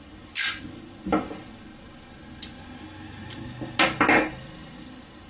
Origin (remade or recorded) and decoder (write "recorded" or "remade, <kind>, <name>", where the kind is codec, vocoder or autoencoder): recorded